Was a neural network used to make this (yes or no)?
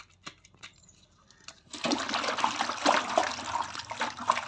no